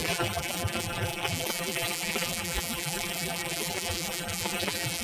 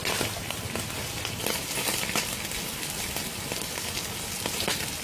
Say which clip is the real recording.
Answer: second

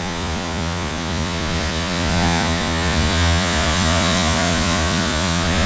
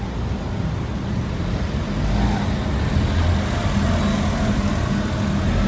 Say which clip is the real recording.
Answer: second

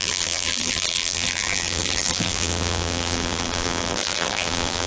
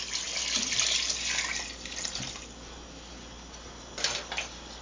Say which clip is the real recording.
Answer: second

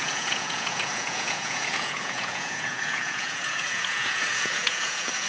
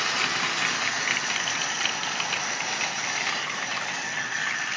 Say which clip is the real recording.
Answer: second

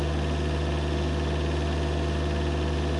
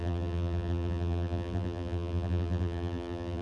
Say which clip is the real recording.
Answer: first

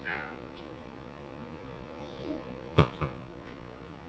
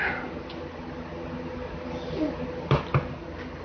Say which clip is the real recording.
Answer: second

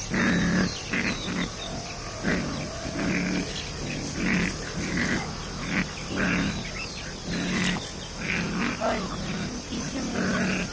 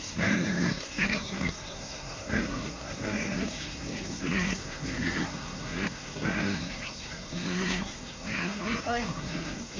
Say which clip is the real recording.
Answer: first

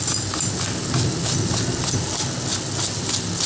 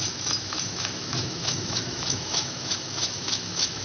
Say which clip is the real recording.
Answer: first